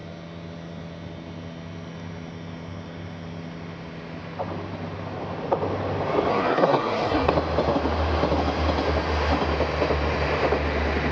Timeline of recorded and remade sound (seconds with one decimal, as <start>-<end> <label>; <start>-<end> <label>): 0.0-6.3 recorded; 6.3-7.3 remade; 7.3-11.1 recorded